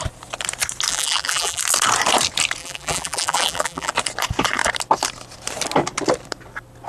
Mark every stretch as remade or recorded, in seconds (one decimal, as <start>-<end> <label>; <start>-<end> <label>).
0.0-0.9 recorded; 0.9-1.6 remade; 1.6-2.6 recorded; 2.6-3.9 remade; 3.9-6.9 recorded